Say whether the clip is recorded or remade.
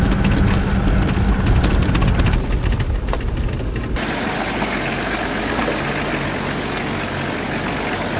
recorded